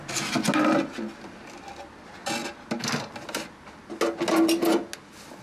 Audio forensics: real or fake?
real